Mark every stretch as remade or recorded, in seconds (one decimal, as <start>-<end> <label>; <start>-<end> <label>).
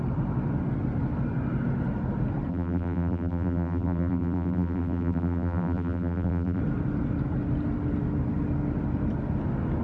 0.0-2.5 recorded; 2.5-6.6 remade; 6.6-9.8 recorded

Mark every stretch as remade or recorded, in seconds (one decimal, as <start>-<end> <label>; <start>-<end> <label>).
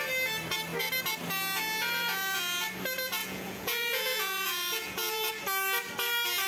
0.0-3.2 recorded; 3.2-5.3 remade; 5.3-6.5 recorded